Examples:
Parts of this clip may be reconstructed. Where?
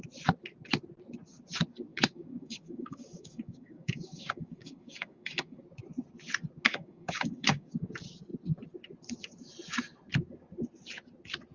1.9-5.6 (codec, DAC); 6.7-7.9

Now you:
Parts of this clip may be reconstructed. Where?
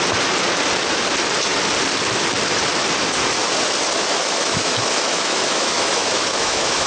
4.1-6.9 (autoencoder, DAC-VAE)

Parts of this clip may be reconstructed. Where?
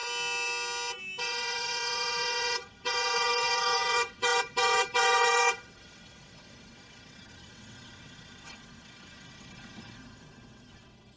1.2-11.2 (vocoder, WaveNeXt)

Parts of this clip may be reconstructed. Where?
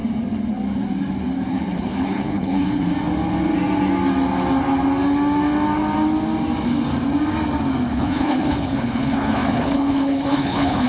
1.5-2.9 (codec, HILCodec); 7.9-10.9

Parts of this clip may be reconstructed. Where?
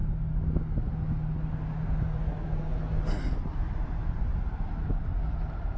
none